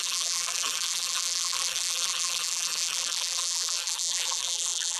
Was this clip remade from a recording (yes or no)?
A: yes